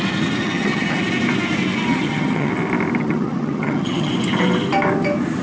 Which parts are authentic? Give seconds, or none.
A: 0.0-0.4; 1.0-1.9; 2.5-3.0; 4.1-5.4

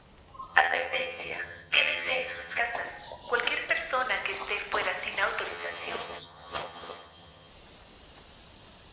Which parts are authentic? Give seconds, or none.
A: 0.0-0.5; 2.6-5.5; 7.5-8.9

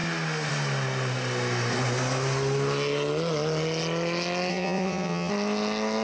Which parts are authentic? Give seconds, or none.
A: 0.0-4.5; 5.3-6.0

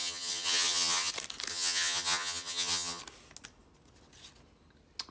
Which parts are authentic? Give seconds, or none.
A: 1.1-1.5; 3.0-5.1

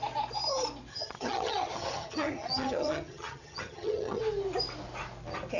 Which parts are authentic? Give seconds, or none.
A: 0.0-0.9; 4.2-5.6

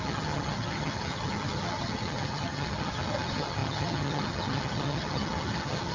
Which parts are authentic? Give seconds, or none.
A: none

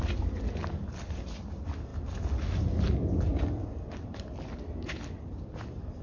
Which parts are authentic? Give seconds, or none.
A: 0.0-6.0

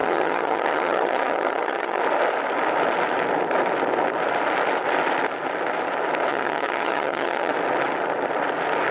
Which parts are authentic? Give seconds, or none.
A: 2.0-6.3; 7.5-8.9